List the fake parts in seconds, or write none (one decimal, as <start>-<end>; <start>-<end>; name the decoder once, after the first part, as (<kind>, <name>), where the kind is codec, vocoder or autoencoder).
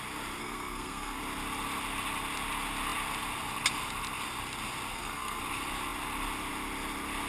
0.4-1.2 (codec, SNAC); 4.9-5.4